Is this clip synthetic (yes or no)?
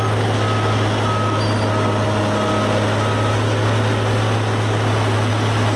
no